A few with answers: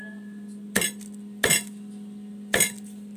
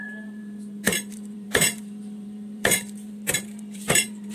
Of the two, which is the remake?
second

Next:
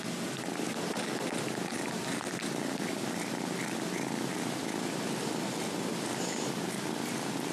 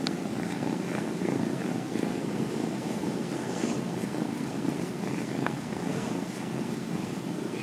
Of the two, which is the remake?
second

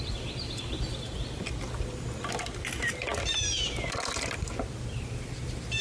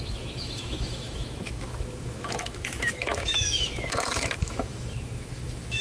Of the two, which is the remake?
second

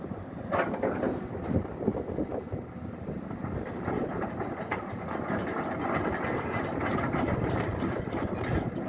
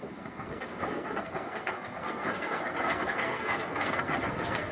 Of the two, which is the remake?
second